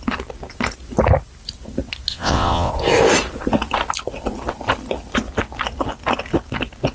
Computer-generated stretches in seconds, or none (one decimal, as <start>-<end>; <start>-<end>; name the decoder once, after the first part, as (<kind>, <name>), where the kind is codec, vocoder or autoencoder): 2.1-2.7 (vocoder, WaveNeXt)